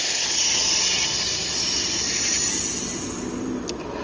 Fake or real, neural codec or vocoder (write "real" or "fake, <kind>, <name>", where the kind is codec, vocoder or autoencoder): real